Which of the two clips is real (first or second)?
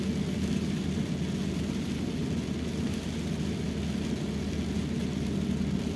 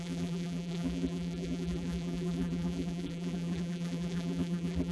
first